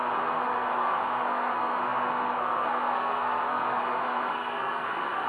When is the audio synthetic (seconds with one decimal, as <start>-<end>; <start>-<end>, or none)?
0.0-5.3

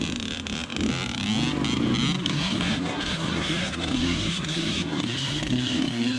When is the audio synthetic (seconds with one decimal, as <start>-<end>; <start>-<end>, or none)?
2.2-6.2

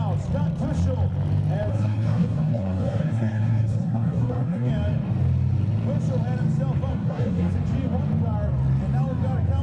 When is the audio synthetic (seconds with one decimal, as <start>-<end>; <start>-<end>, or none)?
1.7-4.7; 6.9-7.5

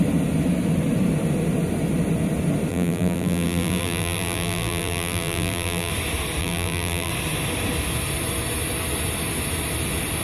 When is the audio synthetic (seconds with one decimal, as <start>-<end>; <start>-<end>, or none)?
2.7-5.9; 6.4-7.1

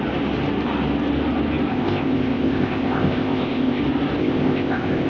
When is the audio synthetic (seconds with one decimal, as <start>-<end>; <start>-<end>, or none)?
1.7-3.8; 4.2-5.1